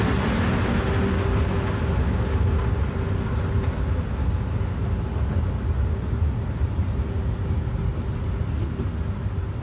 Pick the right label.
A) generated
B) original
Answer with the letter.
B